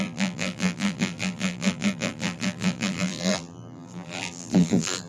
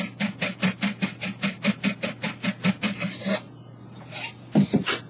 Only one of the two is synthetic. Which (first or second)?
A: first